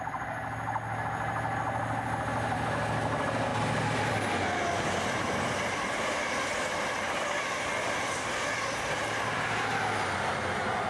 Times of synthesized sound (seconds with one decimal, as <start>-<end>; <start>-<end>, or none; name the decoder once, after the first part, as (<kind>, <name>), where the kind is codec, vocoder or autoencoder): none